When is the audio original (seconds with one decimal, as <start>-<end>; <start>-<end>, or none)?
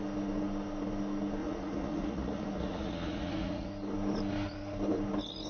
0.0-1.4; 3.7-5.5